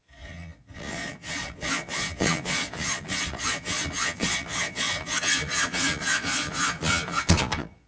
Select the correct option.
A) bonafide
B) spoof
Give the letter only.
B